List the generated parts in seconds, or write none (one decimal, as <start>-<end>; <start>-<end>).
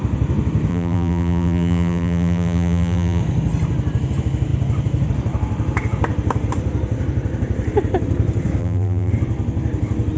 0.7-3.2; 8.6-9.1